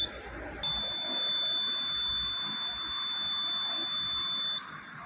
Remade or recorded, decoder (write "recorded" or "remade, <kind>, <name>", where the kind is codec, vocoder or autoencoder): recorded